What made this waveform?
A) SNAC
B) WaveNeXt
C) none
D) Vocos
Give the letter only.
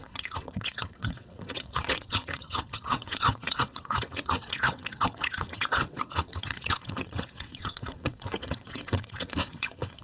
B